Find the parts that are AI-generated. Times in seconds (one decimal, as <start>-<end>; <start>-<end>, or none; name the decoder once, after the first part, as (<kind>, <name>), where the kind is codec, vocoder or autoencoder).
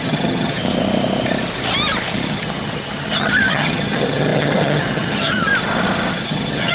0.0-0.6 (vocoder, HiFi-GAN); 2.3-5.5; 6.1-6.7